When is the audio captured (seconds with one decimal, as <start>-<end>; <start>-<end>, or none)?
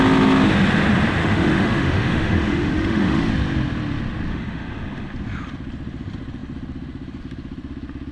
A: 0.0-1.2; 3.3-4.3; 5.1-8.1